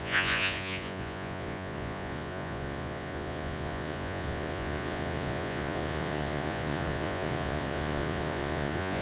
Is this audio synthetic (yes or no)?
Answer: yes